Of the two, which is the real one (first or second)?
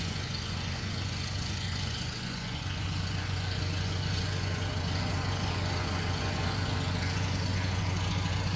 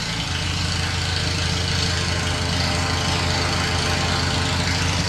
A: second